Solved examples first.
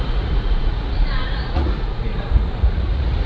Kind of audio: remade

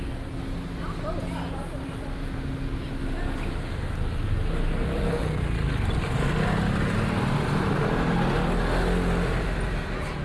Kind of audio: recorded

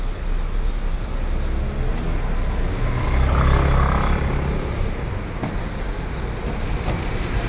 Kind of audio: recorded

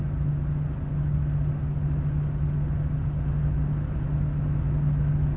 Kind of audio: recorded